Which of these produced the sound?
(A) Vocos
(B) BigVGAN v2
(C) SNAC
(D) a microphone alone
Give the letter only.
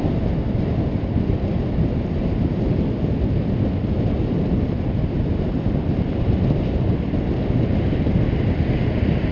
D